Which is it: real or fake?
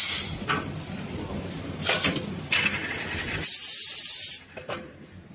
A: real